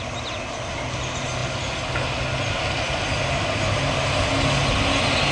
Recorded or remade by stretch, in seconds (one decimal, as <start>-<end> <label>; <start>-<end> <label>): 0.0-5.3 recorded